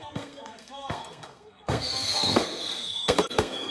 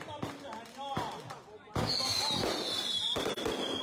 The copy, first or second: first